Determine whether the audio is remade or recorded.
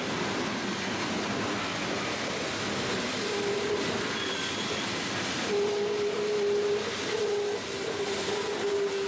recorded